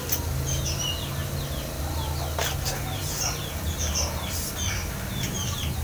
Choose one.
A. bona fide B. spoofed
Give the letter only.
A